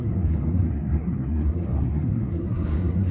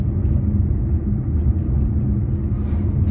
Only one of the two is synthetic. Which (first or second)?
first